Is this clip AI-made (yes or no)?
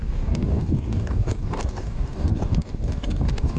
yes